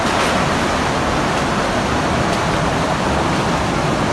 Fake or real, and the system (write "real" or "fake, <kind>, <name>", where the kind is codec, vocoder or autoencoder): real